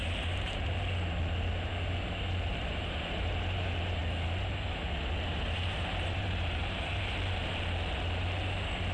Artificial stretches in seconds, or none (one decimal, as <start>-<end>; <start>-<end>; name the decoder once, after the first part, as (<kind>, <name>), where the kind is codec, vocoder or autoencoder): 0.0-0.7 (vocoder, BigVGAN v2); 2.5-4.0; 5.3-7.4